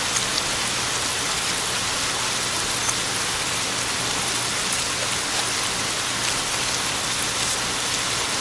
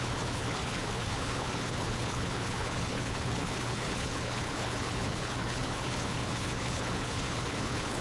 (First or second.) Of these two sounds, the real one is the first